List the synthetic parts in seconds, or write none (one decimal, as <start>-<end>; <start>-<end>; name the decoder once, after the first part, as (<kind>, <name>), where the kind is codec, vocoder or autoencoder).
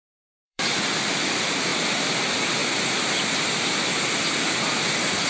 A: 0.0-0.9 (vocoder, BigVGAN v2); 1.7-2.2; 2.6-3.4